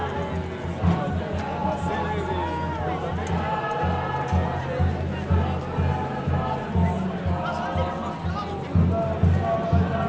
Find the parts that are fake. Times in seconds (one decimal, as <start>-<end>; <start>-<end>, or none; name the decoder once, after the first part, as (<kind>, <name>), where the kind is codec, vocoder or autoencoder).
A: none